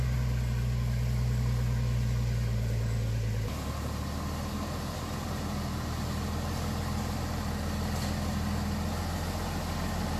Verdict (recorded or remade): recorded